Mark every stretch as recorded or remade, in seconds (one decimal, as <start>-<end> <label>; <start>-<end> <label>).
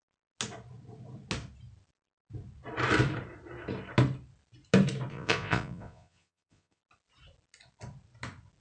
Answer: 0.0-5.1 recorded; 5.1-6.8 remade; 6.8-8.6 recorded